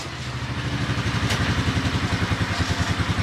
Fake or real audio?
real